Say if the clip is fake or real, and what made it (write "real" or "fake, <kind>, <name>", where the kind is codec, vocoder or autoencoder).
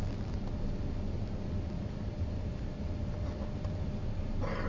real